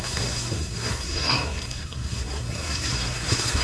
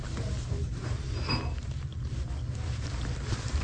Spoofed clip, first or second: first